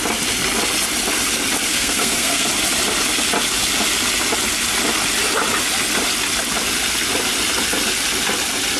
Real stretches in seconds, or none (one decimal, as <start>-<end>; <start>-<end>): 0.0-1.7; 2.5-8.8